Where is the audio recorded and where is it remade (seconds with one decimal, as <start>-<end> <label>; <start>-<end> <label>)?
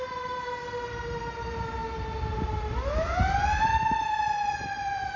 0.0-5.2 recorded